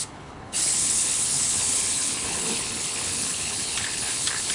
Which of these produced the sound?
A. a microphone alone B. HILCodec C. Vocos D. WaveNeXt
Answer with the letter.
B